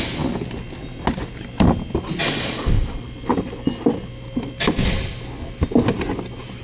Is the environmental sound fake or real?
real